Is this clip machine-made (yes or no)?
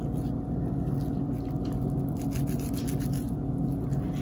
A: no